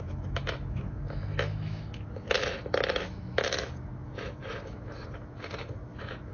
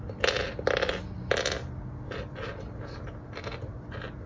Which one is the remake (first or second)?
first